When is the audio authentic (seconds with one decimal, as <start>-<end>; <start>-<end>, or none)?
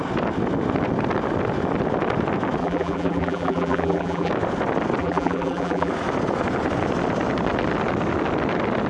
0.0-2.6; 4.3-5.0; 5.9-8.9